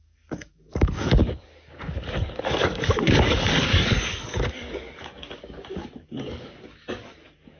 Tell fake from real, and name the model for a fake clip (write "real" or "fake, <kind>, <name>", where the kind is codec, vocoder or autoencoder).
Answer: fake, codec, DAC